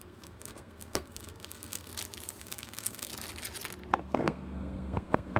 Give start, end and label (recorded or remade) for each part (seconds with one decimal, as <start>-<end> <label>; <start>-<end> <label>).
0.0-1.9 remade; 1.9-2.4 recorded; 2.4-3.1 remade; 3.1-4.0 recorded; 4.0-5.4 remade